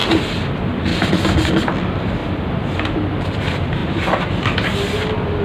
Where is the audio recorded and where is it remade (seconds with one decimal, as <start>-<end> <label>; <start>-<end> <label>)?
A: 0.0-5.4 recorded